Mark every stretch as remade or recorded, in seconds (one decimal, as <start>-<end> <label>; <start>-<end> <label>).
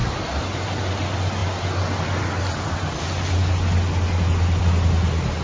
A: 0.0-5.4 recorded